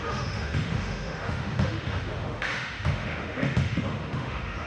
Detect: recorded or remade remade